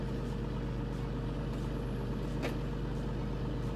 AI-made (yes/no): no